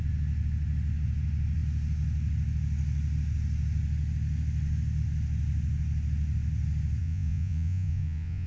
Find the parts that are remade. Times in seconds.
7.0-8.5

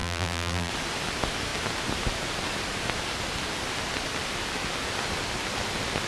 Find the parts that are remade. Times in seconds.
0.0-0.7

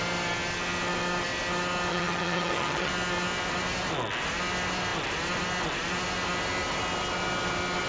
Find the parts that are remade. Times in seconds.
1.9-2.9

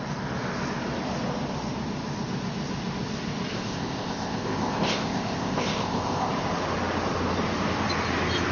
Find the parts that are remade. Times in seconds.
3.5-6.3

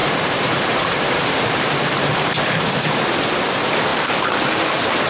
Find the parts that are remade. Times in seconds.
0.0-3.1